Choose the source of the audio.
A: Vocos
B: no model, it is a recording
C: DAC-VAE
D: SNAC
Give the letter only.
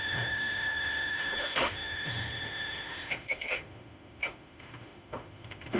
C